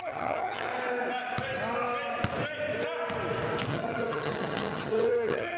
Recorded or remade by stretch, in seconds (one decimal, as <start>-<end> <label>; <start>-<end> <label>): 0.0-0.7 remade; 0.7-3.7 recorded; 3.7-5.6 remade